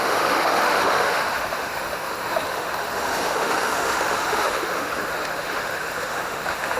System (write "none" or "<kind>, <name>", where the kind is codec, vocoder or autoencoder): autoencoder, DAC-VAE